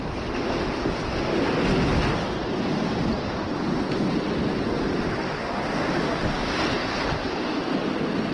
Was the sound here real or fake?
real